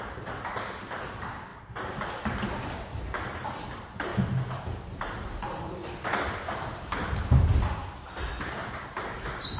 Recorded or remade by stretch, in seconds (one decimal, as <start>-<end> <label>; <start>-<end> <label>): 0.0-4.1 remade; 4.1-4.7 recorded; 4.7-7.8 remade; 7.8-8.4 recorded; 8.4-9.6 remade